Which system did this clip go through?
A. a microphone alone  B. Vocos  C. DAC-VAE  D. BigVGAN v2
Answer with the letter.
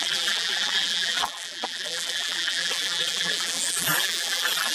D